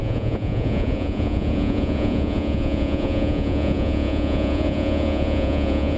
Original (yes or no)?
no